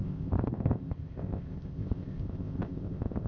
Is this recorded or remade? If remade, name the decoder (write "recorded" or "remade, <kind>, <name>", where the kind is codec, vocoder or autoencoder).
remade, codec, ZipCodec